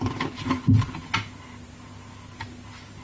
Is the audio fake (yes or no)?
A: no